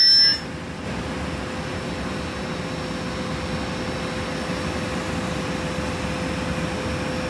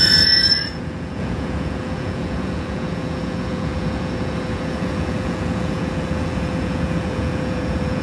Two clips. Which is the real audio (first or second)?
first